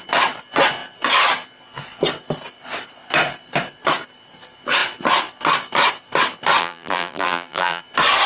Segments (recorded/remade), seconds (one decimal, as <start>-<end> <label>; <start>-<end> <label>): 0.0-6.6 recorded; 6.6-7.8 remade; 7.8-8.3 recorded